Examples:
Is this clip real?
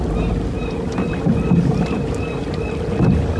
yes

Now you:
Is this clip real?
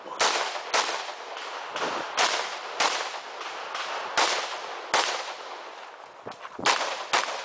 yes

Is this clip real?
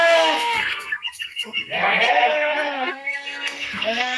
no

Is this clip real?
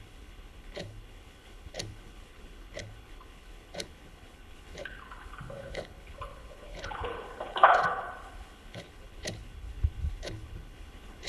no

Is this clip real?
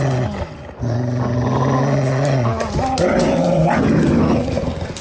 yes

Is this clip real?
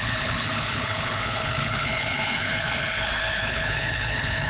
no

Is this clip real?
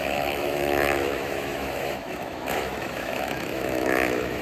no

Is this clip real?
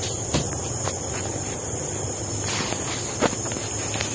yes